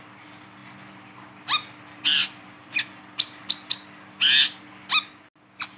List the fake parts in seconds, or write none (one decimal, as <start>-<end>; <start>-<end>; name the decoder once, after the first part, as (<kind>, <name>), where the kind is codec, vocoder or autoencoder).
none